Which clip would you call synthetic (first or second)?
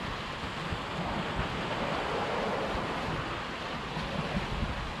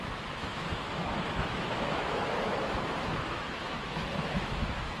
second